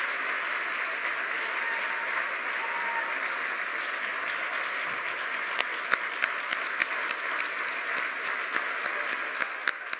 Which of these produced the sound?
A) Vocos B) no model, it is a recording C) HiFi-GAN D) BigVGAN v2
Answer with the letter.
B